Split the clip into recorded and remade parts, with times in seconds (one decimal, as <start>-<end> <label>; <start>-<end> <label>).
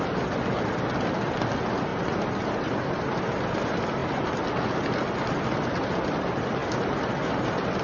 0.0-7.8 recorded